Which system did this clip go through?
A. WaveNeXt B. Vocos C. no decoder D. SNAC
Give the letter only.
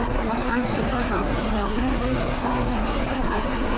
D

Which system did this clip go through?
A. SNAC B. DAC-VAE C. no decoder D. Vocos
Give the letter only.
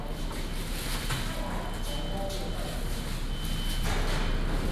C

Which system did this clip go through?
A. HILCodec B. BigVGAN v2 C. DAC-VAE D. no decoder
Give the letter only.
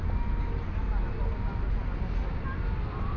D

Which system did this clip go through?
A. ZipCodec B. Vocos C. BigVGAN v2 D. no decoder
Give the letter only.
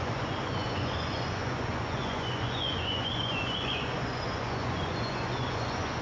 B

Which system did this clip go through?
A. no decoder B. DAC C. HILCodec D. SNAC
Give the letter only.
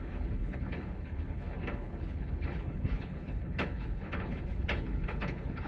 C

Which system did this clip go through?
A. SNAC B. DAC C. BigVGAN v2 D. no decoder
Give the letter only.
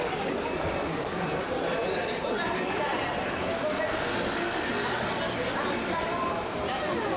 D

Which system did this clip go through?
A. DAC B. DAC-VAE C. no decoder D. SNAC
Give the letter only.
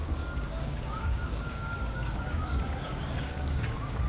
A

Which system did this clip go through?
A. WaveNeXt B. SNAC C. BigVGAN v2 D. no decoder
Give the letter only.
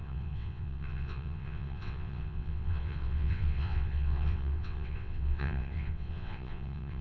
A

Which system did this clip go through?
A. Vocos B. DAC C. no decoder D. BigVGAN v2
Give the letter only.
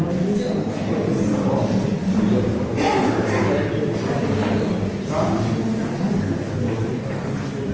C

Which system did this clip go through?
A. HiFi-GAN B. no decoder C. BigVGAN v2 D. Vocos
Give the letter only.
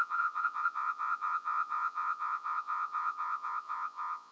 D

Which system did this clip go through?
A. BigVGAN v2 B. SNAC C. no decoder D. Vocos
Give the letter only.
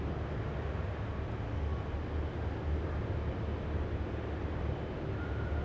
C